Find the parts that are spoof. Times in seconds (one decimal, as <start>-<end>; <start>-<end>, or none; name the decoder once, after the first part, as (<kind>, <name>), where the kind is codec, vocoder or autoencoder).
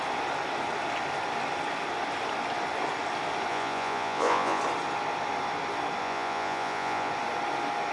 3.5-4.6 (vocoder, Vocos); 6.0-7.1